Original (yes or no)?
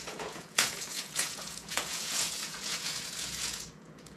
no